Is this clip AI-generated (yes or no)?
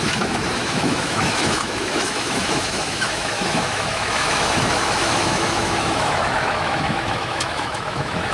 yes